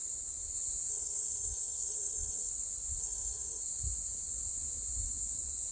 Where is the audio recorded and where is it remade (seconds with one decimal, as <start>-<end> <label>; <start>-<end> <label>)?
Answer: 0.0-0.9 recorded; 0.9-2.5 remade; 2.5-3.0 recorded; 3.0-3.6 remade; 3.6-5.7 recorded